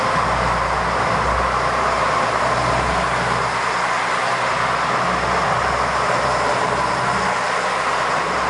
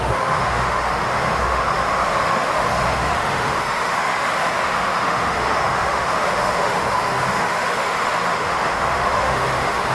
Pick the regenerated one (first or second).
second